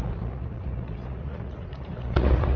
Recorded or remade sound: remade